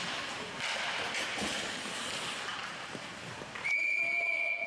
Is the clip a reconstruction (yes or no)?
no